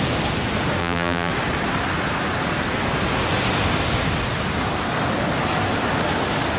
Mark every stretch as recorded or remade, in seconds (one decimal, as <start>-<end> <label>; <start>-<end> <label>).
0.0-0.8 recorded; 0.8-1.3 remade; 1.3-6.6 recorded